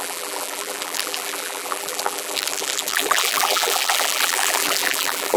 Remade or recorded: remade